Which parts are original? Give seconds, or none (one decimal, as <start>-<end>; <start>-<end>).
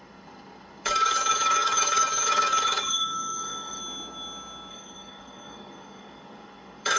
3.8-4.7